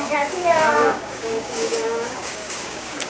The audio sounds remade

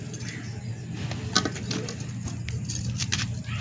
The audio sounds recorded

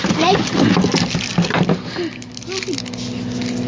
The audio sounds recorded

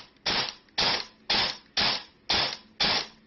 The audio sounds recorded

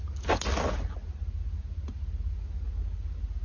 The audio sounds recorded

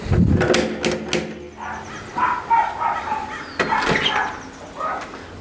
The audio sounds recorded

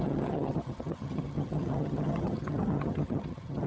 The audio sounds remade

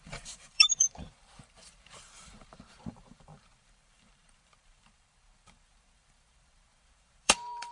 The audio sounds remade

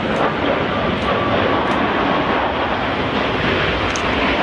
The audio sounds recorded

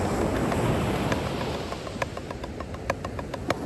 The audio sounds recorded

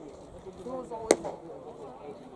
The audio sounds recorded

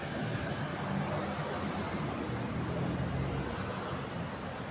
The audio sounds recorded